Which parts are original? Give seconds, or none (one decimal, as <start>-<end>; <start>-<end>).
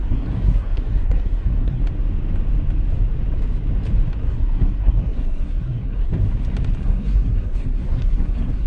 1.8-4.2; 6.1-6.8